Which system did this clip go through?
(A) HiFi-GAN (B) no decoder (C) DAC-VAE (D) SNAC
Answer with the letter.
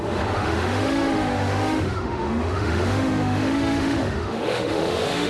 C